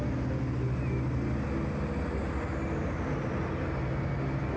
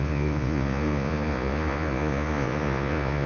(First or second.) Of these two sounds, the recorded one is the first